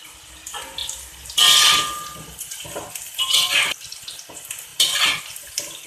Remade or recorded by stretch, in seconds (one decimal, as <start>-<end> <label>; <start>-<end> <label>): 0.0-5.9 remade